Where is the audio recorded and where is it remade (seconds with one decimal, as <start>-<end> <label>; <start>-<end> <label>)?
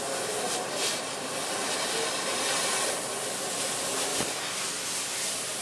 0.0-4.1 remade; 4.1-5.6 recorded